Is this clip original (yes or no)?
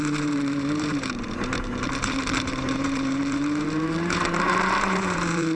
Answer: no